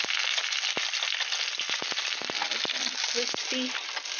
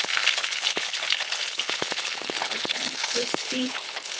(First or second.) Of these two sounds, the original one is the first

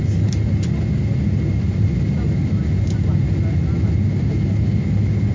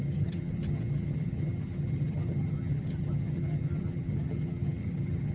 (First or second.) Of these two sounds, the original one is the first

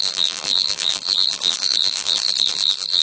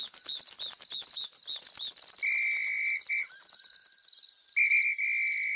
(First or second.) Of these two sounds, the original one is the second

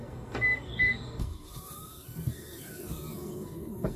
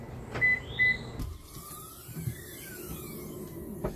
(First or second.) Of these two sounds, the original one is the second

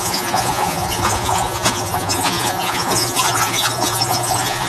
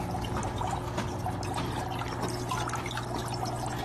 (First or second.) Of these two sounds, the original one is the second